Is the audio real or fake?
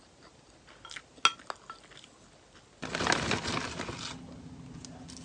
real